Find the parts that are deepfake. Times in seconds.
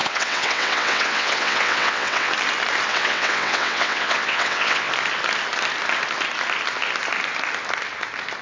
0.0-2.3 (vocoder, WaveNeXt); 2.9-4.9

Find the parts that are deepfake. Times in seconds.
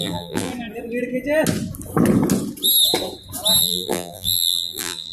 0.0-0.5 (vocoder, BigVGAN v2); 3.6-5.1